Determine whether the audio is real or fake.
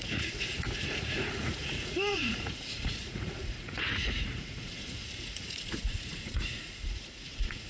fake